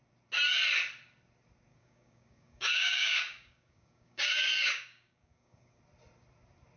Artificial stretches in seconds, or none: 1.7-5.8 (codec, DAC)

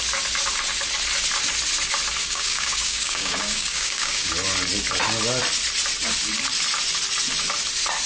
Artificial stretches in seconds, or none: 2.2-4.3 (codec, DAC)